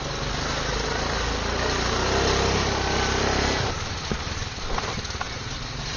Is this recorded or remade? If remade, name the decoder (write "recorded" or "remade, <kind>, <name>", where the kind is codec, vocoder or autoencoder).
recorded